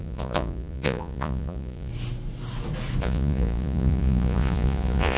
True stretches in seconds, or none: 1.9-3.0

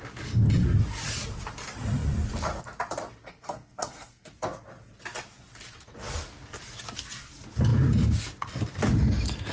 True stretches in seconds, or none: 0.0-3.3; 4.3-9.5

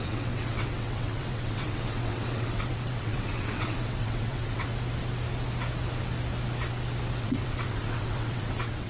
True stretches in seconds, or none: 4.7-7.2

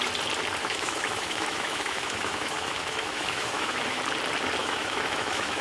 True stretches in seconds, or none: 0.0-0.6; 4.0-4.6

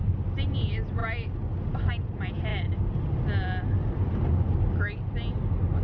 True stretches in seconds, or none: 0.0-5.8

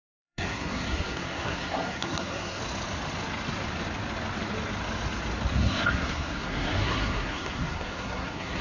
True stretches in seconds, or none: 2.6-5.5